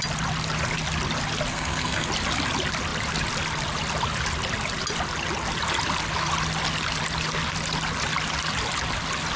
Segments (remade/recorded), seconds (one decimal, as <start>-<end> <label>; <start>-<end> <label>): 0.0-1.5 recorded; 1.5-2.1 remade; 2.1-9.4 recorded